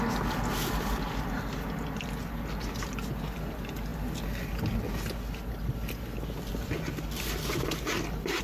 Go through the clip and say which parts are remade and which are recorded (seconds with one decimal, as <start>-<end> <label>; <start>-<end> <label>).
0.0-8.4 recorded